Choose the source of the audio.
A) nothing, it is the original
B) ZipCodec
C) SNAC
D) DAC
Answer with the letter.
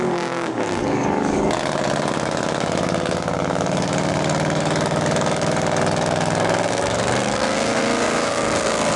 D